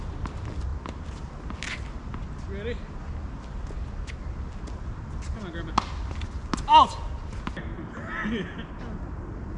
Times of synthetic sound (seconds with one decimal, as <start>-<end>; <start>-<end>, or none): none